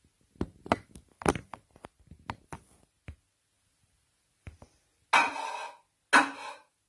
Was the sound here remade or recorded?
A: recorded